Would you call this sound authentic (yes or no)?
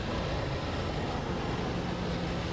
yes